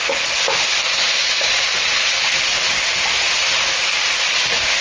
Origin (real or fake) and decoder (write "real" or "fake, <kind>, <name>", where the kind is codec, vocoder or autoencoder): real